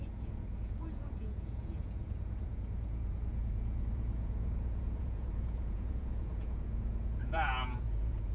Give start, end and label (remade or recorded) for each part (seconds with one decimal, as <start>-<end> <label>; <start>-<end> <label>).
0.0-8.3 remade